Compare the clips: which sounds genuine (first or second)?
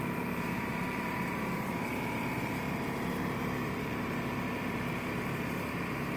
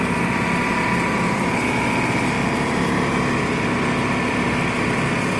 second